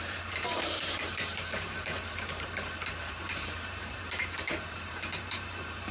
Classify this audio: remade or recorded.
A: remade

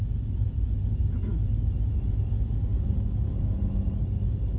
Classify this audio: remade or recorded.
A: recorded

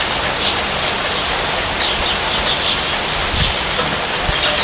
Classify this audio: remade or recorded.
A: recorded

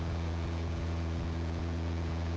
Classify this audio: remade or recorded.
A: remade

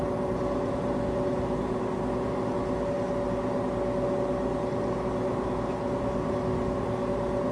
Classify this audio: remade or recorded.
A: recorded